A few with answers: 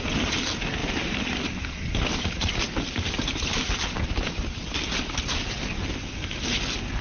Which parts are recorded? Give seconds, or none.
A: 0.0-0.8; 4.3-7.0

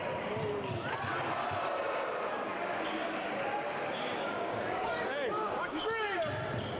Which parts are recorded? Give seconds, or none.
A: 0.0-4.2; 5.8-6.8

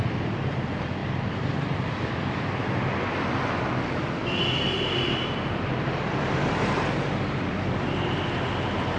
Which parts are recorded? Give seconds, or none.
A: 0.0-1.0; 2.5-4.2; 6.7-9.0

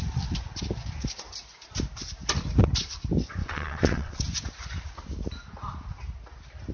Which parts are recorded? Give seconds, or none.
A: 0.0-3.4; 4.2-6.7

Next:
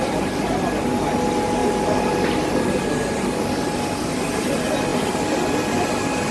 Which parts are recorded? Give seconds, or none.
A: 0.0-6.3

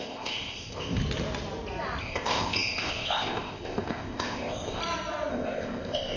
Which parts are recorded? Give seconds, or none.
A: 1.0-2.0; 4.8-5.3

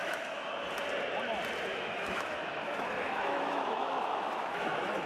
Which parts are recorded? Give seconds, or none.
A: 0.5-1.7

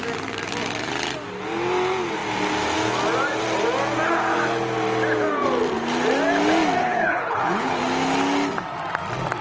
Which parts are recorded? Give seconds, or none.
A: 0.0-6.8; 7.8-9.4